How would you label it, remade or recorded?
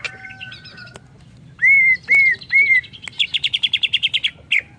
recorded